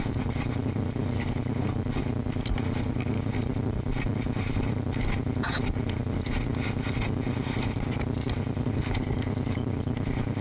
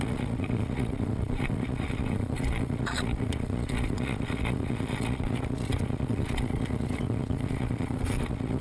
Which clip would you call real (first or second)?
first